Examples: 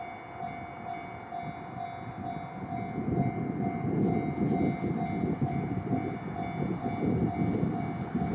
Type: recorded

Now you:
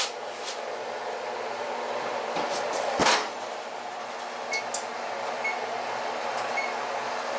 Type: recorded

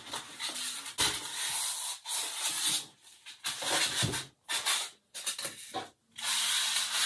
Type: recorded